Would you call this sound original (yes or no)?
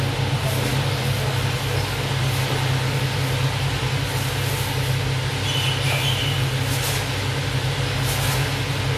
yes